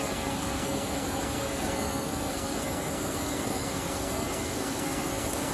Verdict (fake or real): fake